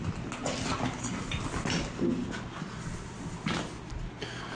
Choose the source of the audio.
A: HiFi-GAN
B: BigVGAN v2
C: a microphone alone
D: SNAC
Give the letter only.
C